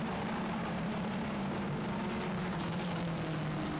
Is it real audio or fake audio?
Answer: fake